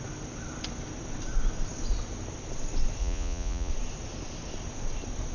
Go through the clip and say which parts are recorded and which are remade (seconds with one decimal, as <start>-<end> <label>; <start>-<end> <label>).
0.0-3.0 recorded; 3.0-3.7 remade; 3.7-5.3 recorded